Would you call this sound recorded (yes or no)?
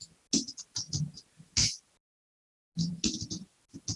yes